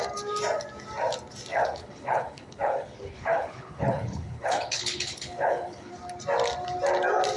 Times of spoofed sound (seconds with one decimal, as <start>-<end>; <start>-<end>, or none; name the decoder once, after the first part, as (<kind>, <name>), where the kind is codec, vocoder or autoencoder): 1.5-5.9 (codec, HILCodec)